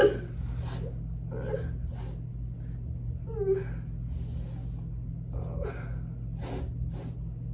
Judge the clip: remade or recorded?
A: recorded